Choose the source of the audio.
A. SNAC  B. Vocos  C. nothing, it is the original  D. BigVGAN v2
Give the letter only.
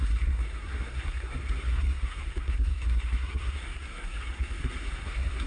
A